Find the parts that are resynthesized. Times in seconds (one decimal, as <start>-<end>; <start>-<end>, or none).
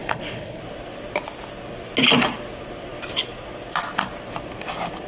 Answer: 0.0-0.6